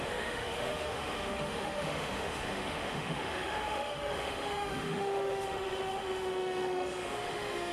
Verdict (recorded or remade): remade